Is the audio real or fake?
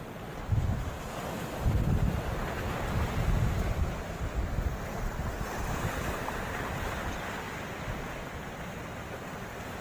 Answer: fake